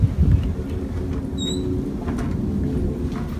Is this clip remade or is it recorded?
recorded